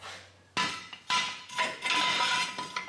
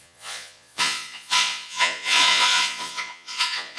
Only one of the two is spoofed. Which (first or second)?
second